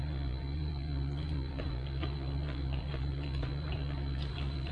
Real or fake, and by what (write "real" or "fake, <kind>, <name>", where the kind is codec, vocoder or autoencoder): fake, vocoder, Vocos